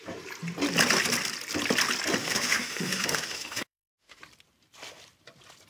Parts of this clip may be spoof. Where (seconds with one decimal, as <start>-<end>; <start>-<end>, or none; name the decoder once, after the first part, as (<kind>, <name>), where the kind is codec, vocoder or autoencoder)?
2.2-4.2 (autoencoder, DAC-VAE)